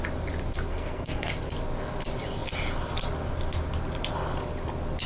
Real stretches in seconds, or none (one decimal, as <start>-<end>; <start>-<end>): 0.0-0.7; 1.3-5.1

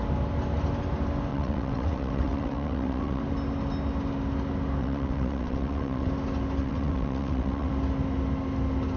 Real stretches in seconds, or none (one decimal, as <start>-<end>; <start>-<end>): 0.0-1.3; 3.2-4.8; 6.1-6.6; 7.7-9.0

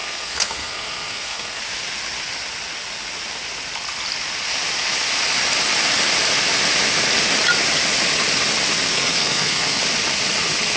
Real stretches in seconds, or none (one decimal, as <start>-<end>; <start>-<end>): 1.6-8.9; 9.8-10.8